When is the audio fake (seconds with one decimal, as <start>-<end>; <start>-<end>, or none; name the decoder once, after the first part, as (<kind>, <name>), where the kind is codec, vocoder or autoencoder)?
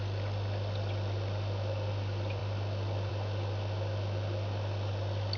none